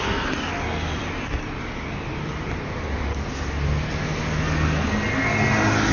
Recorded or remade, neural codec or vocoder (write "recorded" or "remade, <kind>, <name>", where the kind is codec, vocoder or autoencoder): recorded